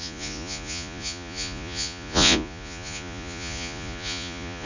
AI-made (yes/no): yes